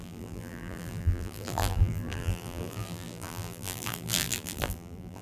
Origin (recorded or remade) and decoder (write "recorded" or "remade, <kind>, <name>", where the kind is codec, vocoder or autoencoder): remade, vocoder, BigVGAN v2